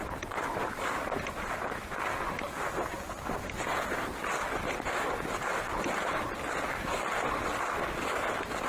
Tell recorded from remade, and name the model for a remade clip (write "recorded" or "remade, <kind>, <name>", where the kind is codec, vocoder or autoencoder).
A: recorded